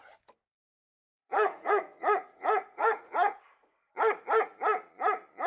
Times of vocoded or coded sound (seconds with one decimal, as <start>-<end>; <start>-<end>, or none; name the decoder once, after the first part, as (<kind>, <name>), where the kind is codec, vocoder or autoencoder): 0.5-3.8 (vocoder, Vocos)

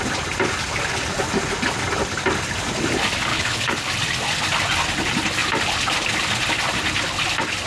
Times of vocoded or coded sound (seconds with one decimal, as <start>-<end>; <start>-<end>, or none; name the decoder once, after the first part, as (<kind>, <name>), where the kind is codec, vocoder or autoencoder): 3.3-3.9 (codec, HILCodec)

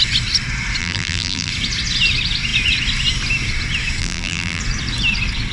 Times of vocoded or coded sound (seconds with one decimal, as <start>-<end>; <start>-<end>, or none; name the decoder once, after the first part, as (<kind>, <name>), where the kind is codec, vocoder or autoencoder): 0.8-1.5 (vocoder, BigVGAN v2); 4.0-4.6